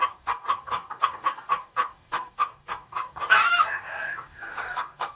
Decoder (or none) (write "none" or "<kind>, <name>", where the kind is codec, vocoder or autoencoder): codec, DAC